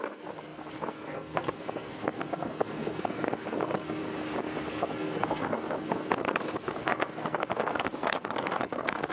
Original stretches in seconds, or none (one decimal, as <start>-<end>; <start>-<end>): 4.0-4.7